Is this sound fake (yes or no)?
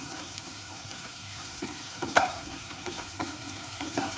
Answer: yes